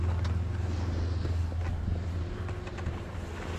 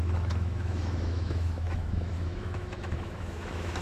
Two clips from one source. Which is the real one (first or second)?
first